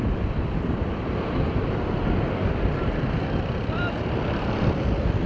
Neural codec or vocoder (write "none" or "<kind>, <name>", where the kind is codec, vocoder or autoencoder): vocoder, BigVGAN v2